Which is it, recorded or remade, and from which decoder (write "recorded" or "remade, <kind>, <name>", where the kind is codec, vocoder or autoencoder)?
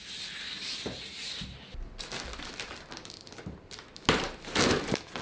recorded